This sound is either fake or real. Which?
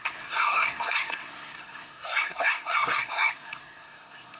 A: fake